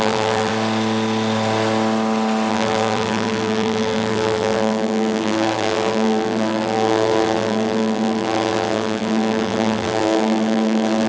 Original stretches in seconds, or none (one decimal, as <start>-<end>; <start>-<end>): 0.5-2.5